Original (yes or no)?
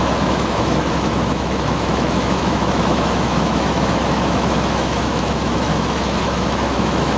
no